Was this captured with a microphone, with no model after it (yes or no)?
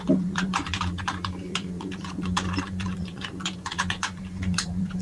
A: no